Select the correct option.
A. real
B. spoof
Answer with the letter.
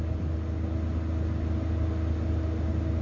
A